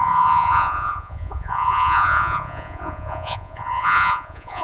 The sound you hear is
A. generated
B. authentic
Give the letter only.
A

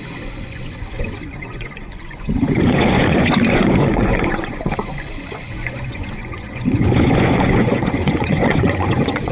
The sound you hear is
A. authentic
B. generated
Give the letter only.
B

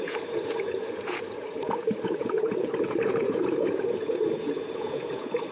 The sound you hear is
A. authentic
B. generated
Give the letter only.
B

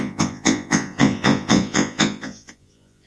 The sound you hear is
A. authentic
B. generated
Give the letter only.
B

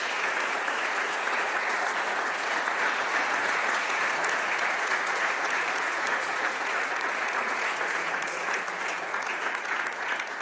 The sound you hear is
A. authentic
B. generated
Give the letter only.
B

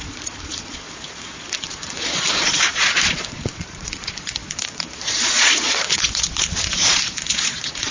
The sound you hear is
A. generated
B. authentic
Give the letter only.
A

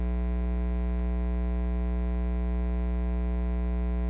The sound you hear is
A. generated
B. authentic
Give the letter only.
B